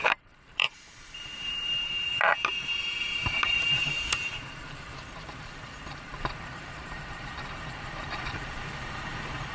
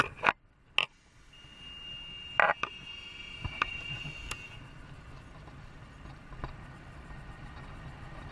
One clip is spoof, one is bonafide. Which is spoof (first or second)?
first